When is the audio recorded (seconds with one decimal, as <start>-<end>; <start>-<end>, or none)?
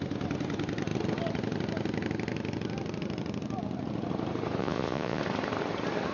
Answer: 0.0-4.6; 5.2-6.1